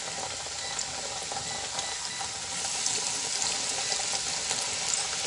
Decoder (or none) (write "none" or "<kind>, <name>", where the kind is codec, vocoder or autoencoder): none